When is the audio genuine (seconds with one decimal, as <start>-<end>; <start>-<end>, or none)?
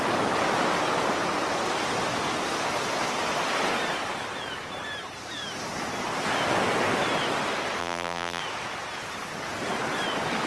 0.0-7.8; 8.4-10.5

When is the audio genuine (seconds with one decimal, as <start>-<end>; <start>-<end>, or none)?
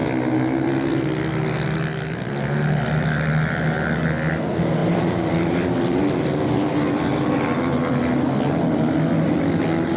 0.0-4.8; 9.4-10.0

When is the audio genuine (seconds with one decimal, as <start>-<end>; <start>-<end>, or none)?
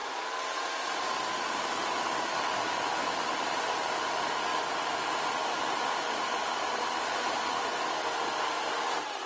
0.0-9.3